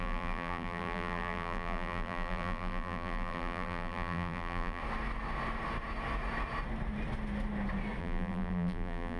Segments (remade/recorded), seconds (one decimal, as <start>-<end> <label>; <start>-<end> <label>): 0.0-4.8 remade; 4.8-8.0 recorded; 8.0-9.2 remade